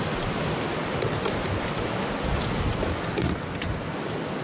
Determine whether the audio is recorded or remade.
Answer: recorded